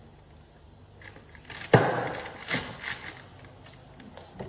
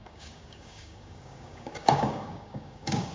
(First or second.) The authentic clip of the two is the first